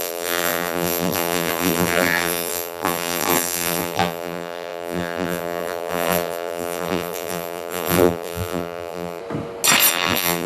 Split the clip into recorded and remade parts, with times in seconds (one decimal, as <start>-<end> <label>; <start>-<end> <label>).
0.0-9.2 remade; 9.2-9.9 recorded; 9.9-10.5 remade